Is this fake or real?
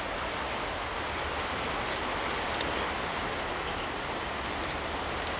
real